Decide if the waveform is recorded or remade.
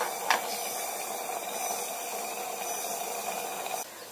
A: recorded